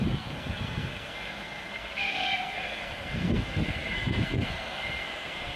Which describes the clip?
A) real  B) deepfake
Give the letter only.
B